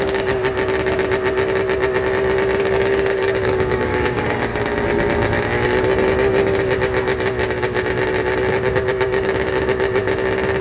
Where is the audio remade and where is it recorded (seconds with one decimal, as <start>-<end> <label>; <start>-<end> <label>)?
0.0-0.4 remade; 0.4-2.6 recorded; 2.6-4.5 remade; 4.5-8.5 recorded; 8.5-10.0 remade; 10.0-10.6 recorded